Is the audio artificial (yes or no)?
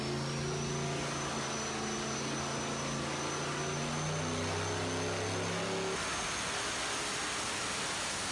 no